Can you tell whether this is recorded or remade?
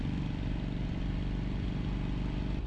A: recorded